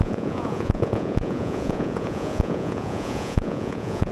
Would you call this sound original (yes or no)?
no